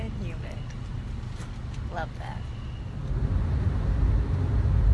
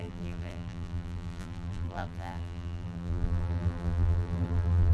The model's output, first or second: second